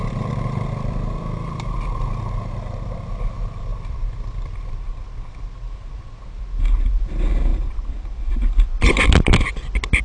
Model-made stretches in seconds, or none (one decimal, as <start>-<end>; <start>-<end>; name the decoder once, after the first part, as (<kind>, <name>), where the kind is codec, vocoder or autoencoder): 3.7-7.0 (vocoder, BigVGAN v2); 7.5-8.5